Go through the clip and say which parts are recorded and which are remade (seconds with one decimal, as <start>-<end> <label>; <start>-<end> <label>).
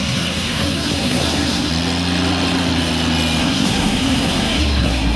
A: 0.0-1.7 remade; 1.7-3.4 recorded; 3.4-5.2 remade